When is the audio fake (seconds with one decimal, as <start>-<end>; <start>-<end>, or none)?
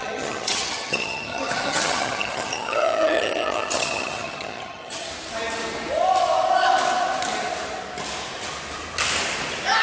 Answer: 0.0-5.1